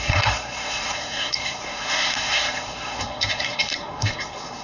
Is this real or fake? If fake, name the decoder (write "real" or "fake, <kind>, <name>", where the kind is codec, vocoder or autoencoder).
fake, codec, SNAC